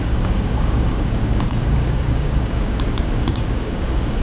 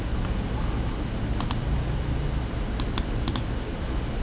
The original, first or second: second